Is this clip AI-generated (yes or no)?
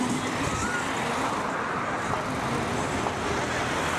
no